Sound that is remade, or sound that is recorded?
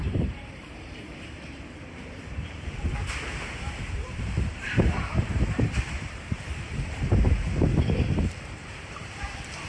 remade